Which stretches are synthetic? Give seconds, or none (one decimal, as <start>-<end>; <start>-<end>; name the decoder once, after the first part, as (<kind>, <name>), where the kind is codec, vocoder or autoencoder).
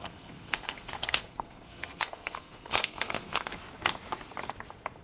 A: 0.0-3.5 (codec, SNAC)